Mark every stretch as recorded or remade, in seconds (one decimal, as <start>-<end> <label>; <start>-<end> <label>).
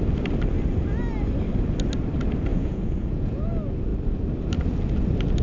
0.0-2.5 recorded; 2.5-3.5 remade; 3.5-5.4 recorded